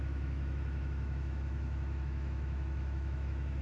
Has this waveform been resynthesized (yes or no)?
yes